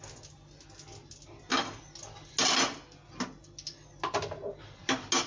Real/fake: real